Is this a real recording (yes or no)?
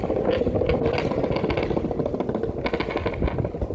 yes